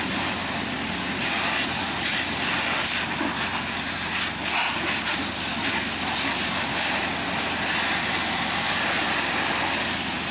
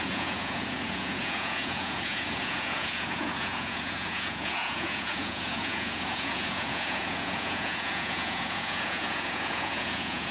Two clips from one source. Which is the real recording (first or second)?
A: first